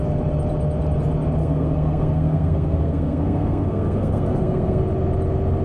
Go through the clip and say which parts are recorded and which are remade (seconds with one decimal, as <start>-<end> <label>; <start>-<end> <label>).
0.0-1.4 recorded; 1.4-4.8 remade; 4.8-5.6 recorded